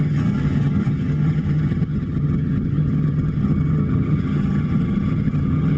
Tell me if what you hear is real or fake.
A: fake